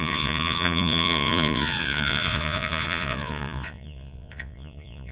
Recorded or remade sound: remade